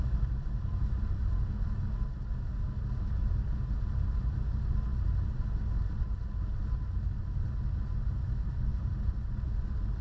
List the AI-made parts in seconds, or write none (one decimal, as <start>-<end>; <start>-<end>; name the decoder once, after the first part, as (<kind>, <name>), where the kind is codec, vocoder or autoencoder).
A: none